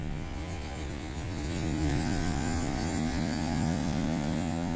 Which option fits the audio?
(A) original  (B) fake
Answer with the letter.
B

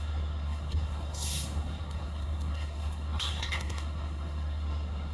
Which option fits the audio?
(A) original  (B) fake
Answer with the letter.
B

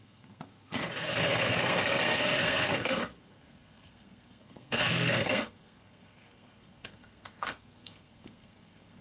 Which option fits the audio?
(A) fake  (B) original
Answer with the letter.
A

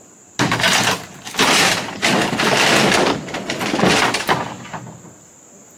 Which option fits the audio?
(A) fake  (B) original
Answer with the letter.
B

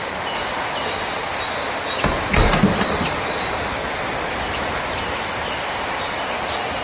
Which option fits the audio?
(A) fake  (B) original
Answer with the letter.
B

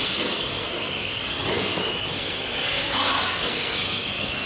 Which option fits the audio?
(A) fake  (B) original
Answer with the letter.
A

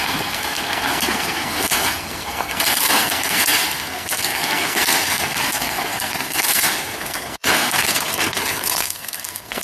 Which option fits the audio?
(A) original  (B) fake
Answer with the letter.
B